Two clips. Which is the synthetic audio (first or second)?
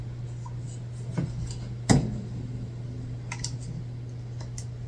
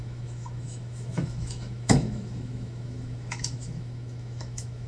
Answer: second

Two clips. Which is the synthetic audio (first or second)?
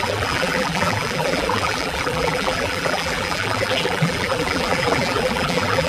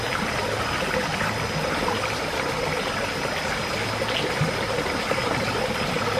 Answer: first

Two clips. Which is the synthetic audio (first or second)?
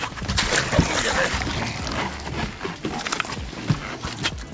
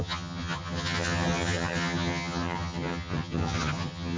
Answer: second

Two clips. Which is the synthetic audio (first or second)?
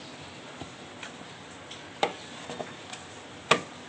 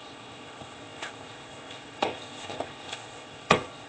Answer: second